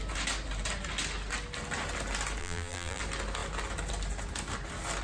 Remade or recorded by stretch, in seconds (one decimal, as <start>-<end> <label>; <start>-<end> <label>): 0.0-2.4 recorded; 2.4-3.0 remade; 3.0-5.0 recorded